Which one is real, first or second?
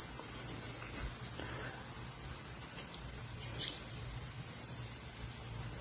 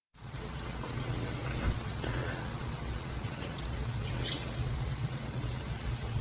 first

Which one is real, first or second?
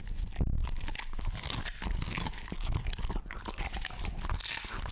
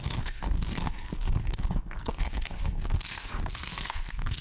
first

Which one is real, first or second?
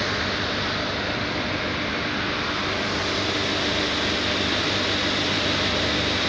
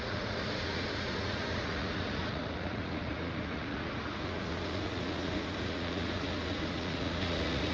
first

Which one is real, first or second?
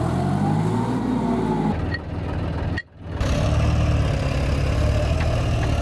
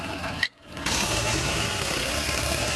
first